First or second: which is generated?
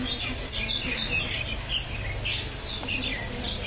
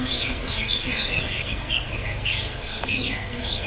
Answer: second